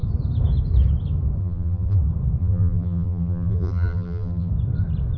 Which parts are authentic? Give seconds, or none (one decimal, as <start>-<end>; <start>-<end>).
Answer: 0.0-1.4; 2.0-2.4; 4.5-5.2